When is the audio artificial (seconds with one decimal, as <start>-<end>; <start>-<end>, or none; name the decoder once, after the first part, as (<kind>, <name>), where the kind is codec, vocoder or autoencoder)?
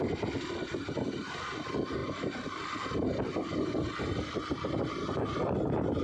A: none